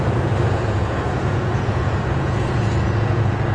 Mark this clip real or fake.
fake